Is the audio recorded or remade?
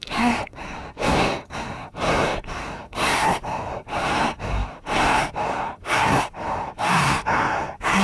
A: remade